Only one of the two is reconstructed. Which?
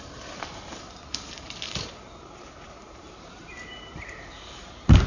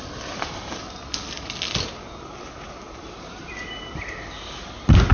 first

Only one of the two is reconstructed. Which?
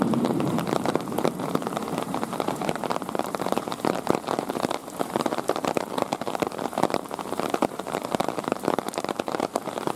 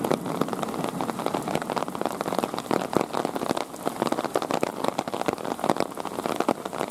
first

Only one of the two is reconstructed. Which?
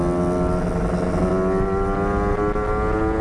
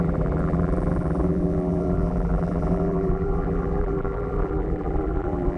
second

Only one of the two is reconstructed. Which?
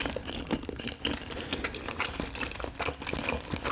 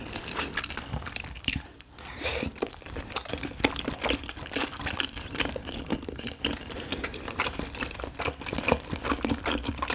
second